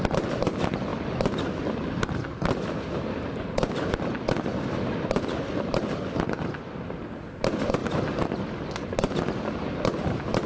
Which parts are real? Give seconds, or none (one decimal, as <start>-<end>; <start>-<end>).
0.0-10.5